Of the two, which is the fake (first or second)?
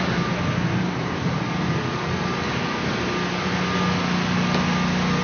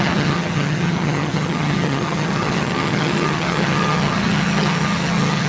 second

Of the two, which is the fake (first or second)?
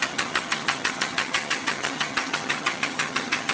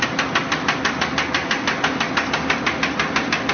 first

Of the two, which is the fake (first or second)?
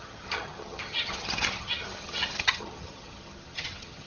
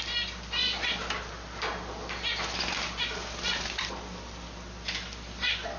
first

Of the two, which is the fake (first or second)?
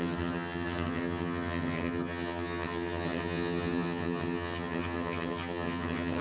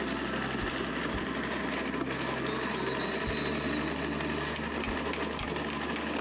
first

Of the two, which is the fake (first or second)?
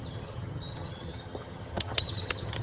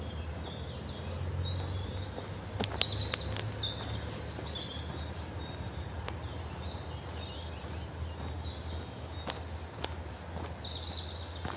first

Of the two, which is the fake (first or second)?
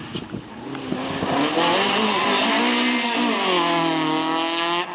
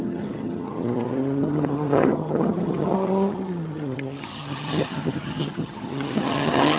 second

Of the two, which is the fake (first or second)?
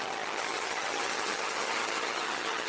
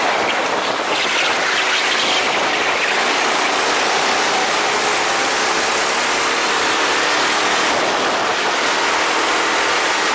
first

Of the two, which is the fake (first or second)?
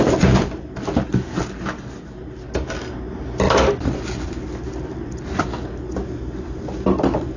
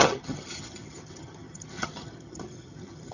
second